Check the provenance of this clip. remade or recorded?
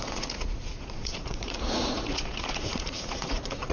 remade